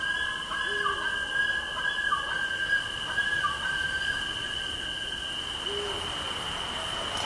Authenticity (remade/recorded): recorded